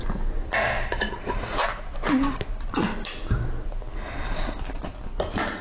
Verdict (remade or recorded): recorded